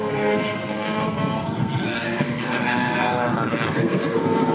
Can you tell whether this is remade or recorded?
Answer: remade